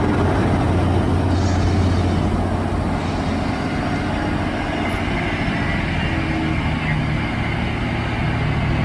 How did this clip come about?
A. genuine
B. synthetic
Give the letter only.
A